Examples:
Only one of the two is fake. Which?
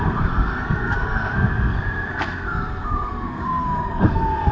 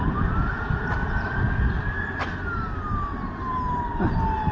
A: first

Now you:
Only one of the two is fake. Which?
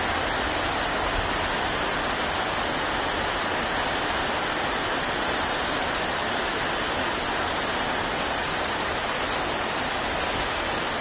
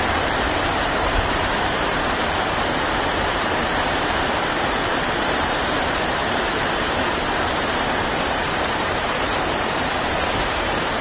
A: second